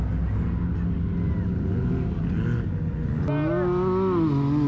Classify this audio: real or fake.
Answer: real